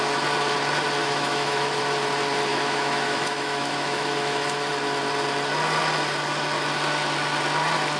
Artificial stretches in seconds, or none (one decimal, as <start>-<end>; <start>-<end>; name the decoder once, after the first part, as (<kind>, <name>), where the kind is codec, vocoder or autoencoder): 1.0-1.8 (autoencoder, DAC-VAE); 2.5-4.7